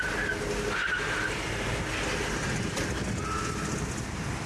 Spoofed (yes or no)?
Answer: no